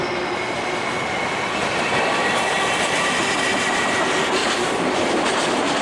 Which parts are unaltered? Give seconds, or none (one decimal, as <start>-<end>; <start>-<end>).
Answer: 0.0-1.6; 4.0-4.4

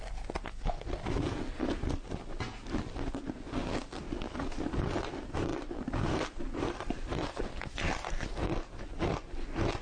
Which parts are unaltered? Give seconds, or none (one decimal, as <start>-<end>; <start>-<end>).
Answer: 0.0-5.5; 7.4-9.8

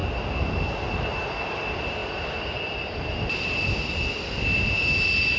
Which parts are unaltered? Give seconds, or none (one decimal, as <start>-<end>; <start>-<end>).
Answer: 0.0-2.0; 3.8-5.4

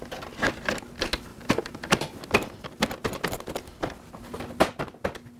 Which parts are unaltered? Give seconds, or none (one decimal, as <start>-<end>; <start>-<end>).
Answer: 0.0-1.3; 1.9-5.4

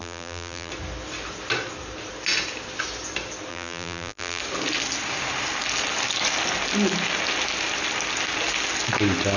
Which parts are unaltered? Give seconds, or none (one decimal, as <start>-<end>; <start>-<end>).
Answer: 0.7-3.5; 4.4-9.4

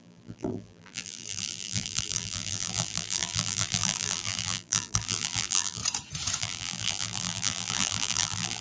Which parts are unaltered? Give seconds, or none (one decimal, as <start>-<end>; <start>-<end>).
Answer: 5.8-6.4